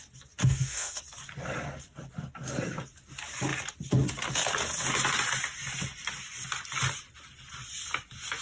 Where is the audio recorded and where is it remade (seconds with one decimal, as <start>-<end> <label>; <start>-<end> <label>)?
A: 0.0-0.4 recorded; 0.4-1.0 remade; 1.0-8.4 recorded